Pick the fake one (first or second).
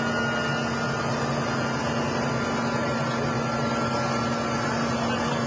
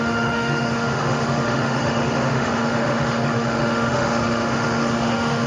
second